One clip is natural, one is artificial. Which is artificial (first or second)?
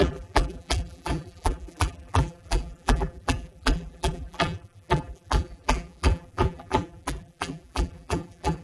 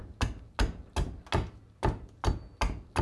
first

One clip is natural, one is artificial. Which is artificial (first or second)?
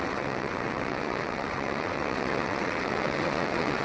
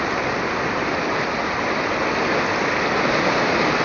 first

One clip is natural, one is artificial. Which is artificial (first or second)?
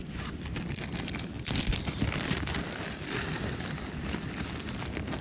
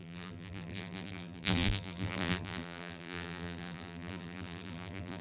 second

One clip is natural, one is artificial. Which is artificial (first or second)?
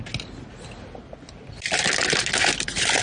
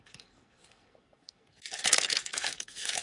second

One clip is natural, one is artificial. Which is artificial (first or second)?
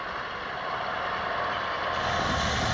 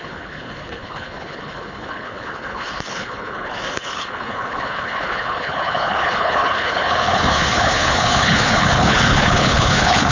second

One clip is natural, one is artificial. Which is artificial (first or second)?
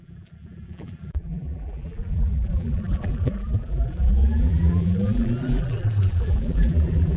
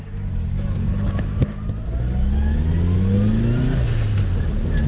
first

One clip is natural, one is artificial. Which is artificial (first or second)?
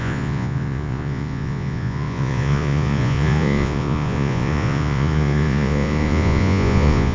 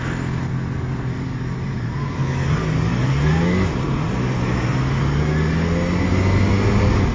first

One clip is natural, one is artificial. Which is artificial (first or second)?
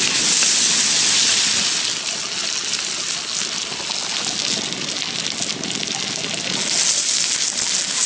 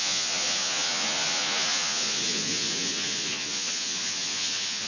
second